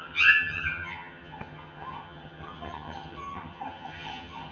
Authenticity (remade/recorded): remade